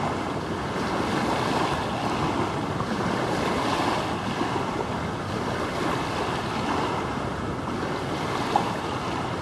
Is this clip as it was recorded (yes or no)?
yes